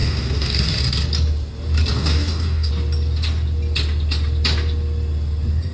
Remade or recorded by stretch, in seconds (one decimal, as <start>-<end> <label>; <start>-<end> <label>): 0.0-0.8 remade; 0.8-2.0 recorded; 2.0-2.7 remade; 2.7-5.7 recorded